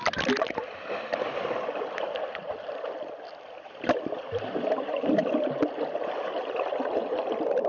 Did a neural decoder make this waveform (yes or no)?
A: no